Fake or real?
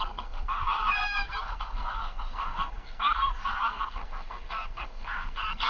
fake